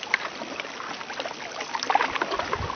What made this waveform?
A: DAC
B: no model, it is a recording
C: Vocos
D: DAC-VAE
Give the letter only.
B